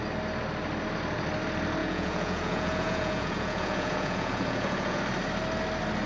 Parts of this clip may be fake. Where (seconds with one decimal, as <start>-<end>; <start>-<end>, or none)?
1.8-5.0